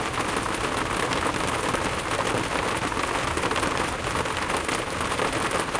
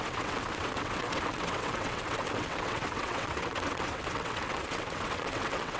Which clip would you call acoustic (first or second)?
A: first